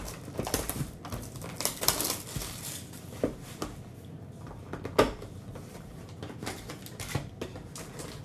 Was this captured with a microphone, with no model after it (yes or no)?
yes